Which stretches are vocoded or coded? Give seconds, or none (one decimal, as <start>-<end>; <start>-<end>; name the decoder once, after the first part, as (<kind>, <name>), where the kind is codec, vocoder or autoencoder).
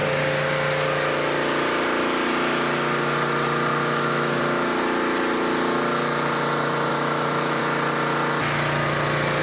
3.7-4.4 (autoencoder, DAC-VAE); 6.9-7.6